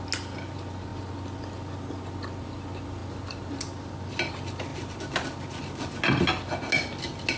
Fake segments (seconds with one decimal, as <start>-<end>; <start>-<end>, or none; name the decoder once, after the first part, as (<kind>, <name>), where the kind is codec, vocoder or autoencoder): none

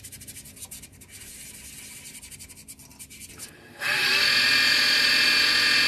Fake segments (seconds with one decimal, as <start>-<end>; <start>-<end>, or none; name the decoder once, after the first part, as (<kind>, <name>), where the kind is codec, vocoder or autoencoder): 2.9-5.5 (vocoder, BigVGAN v2)

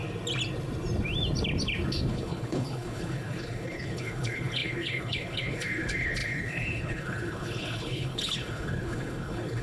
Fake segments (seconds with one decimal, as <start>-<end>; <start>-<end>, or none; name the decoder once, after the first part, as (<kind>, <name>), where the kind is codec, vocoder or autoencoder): 2.1-9.6 (codec, HILCodec)

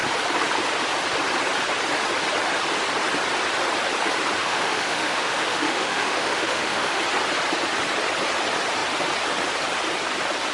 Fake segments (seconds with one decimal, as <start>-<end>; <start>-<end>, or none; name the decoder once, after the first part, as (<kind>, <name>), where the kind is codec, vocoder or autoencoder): 4.4-7.0 (autoencoder, DAC-VAE)

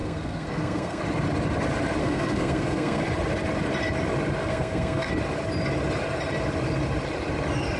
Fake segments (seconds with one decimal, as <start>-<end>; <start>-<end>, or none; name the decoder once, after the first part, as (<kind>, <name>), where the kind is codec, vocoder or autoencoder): 0.0-1.0 (codec, SNAC); 2.0-3.0; 4.4-5.1

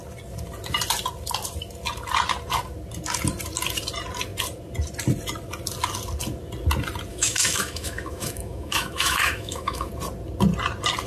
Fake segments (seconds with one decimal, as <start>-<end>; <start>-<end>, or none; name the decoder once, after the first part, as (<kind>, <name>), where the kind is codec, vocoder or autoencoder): 7.1-9.9 (autoencoder, DAC-VAE)

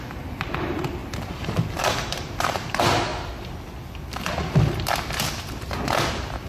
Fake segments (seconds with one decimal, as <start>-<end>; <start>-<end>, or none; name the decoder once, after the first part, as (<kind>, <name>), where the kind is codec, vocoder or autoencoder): 0.0-3.1 (vocoder, BigVGAN v2); 6.1-6.5

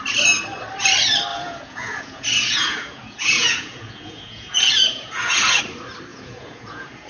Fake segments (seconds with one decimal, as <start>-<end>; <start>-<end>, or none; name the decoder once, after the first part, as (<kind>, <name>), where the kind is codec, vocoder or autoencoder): 1.3-5.6 (vocoder, Vocos); 6.1-7.1